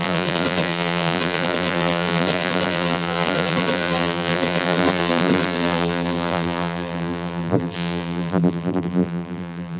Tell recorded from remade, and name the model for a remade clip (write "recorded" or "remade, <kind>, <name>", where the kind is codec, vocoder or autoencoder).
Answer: remade, vocoder, BigVGAN v2